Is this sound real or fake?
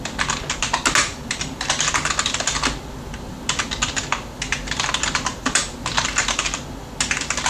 real